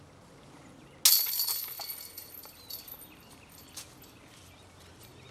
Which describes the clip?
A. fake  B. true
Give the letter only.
B